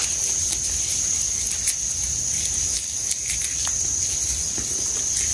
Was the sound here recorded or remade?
recorded